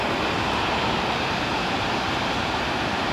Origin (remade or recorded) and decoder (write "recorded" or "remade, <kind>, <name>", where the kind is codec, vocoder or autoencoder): remade, vocoder, BigVGAN v2